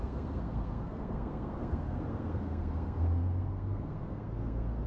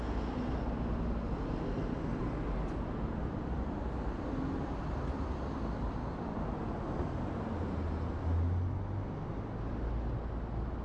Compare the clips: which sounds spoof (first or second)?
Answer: first